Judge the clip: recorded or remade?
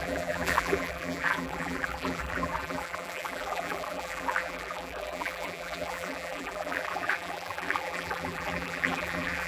remade